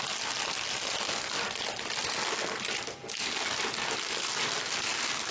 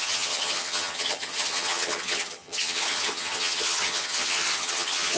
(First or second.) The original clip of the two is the first